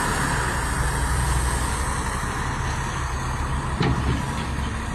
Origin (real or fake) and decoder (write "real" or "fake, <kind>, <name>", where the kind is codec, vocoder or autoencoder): real